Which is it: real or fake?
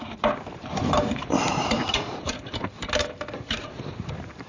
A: fake